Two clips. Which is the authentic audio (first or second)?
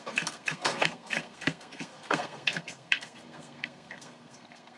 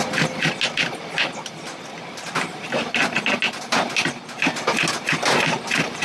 second